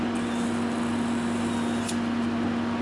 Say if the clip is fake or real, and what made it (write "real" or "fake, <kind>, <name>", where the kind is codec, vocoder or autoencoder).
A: real